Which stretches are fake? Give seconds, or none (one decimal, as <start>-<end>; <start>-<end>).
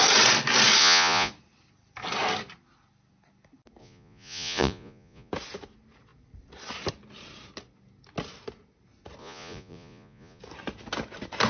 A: 0.8-1.3; 3.8-5.3; 9.2-10.4